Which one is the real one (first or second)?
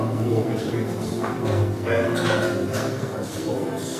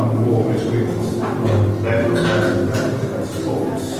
second